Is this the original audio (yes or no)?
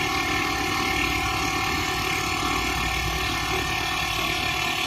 yes